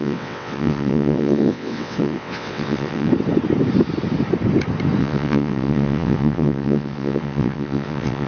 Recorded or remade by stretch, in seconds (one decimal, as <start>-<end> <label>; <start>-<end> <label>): 0.0-3.1 remade; 3.1-5.0 recorded; 5.0-8.3 remade